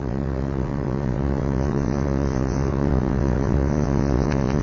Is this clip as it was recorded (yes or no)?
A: no